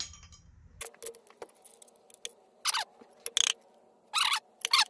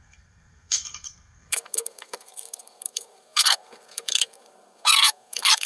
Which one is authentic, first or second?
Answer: first